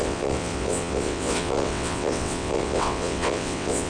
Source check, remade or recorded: remade